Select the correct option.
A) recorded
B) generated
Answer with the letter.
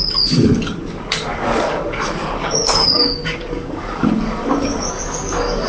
B